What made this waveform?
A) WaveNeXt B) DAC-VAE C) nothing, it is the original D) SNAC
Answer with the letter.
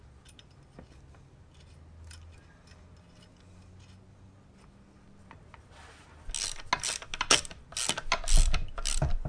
C